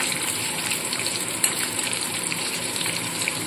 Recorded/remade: remade